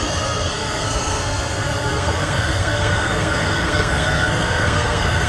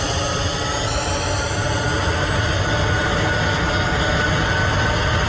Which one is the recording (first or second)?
second